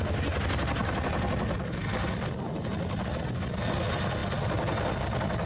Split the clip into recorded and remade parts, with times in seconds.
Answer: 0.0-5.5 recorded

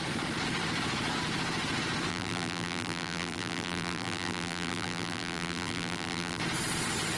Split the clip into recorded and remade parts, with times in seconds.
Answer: 0.0-2.1 recorded; 2.1-6.4 remade; 6.4-7.2 recorded

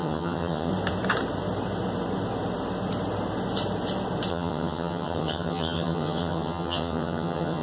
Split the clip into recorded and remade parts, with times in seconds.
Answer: 0.0-0.7 remade; 0.7-4.3 recorded; 4.3-7.6 remade

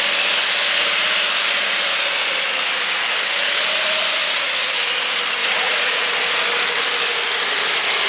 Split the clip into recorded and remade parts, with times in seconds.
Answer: 0.0-4.2 recorded; 4.2-4.7 remade; 4.7-5.4 recorded; 5.4-6.1 remade; 6.1-8.1 recorded

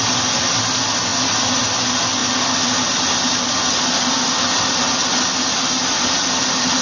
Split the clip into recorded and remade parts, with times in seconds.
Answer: 0.0-6.8 recorded